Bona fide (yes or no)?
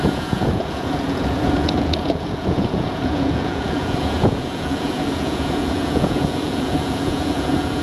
no